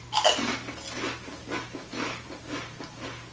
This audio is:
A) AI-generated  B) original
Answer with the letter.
B